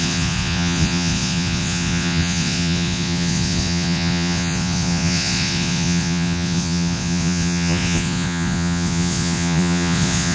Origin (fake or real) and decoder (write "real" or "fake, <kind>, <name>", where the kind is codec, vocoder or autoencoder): fake, vocoder, Vocos